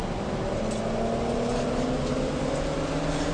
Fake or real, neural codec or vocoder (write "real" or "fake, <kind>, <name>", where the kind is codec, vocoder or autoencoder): real